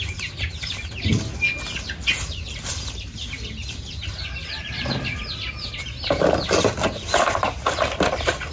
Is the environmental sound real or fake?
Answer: real